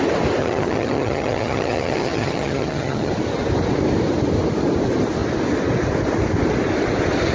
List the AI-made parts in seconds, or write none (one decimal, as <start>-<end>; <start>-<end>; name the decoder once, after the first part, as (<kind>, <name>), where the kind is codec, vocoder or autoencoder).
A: 0.4-3.1 (vocoder, HiFi-GAN)